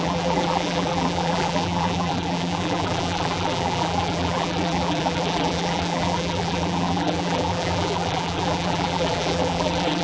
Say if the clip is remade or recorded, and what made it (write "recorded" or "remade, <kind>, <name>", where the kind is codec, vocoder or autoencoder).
remade, vocoder, BigVGAN v2